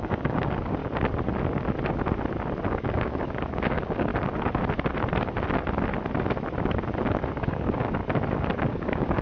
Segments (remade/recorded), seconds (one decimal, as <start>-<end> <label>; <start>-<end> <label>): 0.0-0.8 remade; 0.8-2.7 recorded; 2.7-4.1 remade; 4.1-7.4 recorded; 7.4-8.0 remade; 8.0-8.7 recorded; 8.7-9.2 remade